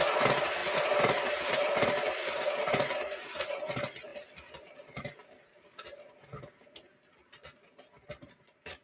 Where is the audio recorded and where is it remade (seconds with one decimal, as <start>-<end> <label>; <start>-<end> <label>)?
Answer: 0.0-4.1 recorded; 4.1-6.0 remade; 6.0-8.8 recorded